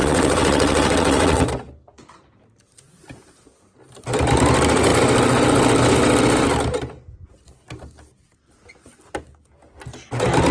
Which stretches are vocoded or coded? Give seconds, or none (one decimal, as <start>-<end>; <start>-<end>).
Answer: 0.0-1.5

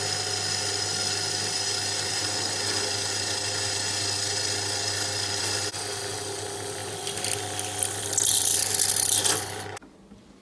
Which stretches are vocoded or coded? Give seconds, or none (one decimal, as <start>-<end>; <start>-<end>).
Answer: none

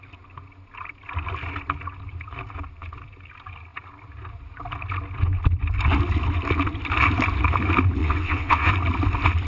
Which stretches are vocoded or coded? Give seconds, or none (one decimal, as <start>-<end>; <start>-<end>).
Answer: 8.0-8.7

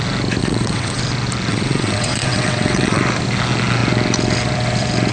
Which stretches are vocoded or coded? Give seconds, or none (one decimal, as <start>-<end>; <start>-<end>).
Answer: 0.4-1.0; 1.5-3.0

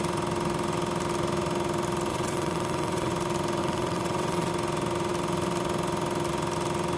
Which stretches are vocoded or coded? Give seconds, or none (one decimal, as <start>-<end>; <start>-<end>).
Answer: 2.1-3.1; 3.6-4.5

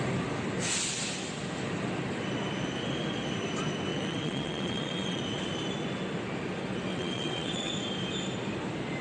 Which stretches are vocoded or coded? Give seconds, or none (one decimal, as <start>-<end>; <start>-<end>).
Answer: 3.9-5.2; 6.9-7.7